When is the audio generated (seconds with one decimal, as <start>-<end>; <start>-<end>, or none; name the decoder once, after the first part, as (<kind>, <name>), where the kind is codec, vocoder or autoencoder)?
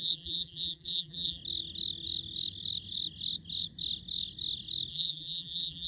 0.0-1.4 (vocoder, BigVGAN v2); 4.9-5.9